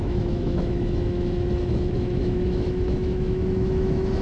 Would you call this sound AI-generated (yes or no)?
yes